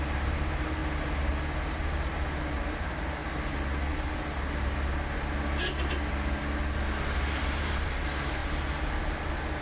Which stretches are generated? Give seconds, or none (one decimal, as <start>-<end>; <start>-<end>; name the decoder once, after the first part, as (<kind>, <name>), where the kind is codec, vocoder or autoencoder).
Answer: 0.0-0.8 (vocoder, BigVGAN v2); 2.7-3.2; 7.4-8.4